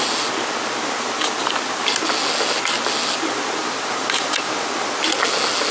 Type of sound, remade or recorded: recorded